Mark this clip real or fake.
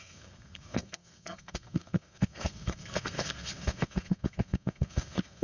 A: fake